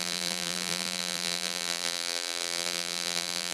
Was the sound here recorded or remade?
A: remade